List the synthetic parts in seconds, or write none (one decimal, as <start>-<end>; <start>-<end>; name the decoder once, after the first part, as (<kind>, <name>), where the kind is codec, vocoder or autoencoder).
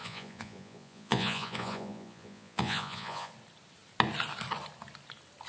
0.0-3.3 (vocoder, Vocos)